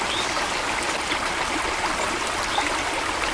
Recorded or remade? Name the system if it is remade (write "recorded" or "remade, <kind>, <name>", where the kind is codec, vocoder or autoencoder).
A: recorded